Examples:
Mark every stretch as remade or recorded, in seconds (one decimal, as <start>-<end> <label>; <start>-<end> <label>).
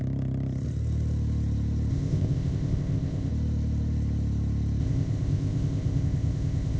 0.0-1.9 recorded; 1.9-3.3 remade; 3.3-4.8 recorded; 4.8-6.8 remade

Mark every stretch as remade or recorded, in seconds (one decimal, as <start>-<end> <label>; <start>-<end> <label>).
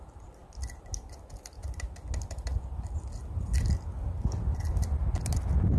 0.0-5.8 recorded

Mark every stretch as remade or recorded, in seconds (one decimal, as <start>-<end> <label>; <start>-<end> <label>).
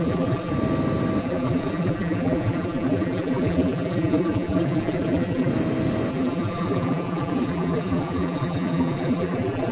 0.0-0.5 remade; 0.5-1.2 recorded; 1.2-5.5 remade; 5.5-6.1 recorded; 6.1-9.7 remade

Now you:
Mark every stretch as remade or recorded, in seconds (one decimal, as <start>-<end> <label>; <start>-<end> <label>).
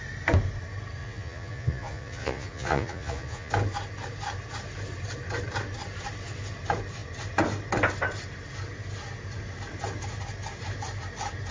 0.0-1.0 recorded; 1.0-3.5 remade; 3.5-11.5 recorded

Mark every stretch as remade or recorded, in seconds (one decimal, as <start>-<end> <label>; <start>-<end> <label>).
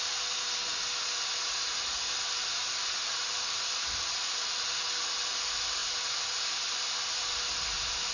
0.0-8.1 recorded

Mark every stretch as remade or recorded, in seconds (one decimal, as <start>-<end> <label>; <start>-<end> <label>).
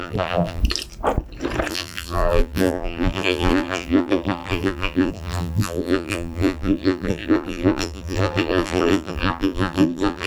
0.0-0.6 remade; 0.6-1.7 recorded; 1.7-10.3 remade